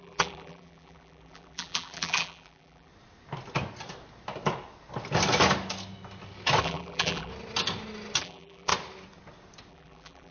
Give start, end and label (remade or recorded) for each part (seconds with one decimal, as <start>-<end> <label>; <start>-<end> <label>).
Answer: 0.0-2.9 remade; 2.9-6.6 recorded; 6.6-7.3 remade; 7.3-8.2 recorded; 8.2-8.7 remade; 8.7-9.7 recorded; 9.7-10.3 remade